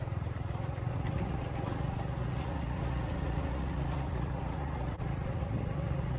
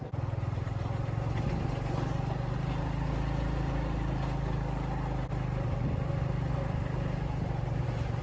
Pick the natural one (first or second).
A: second